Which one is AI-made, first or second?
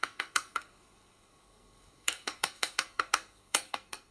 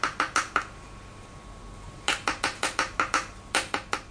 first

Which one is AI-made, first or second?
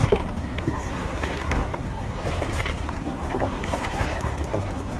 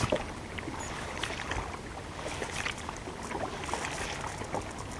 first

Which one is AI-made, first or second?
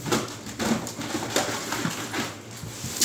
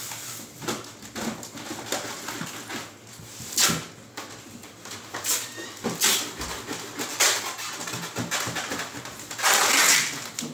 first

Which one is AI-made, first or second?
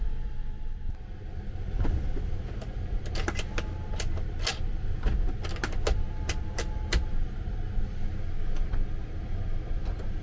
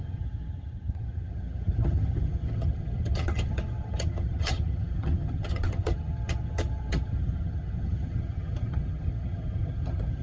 second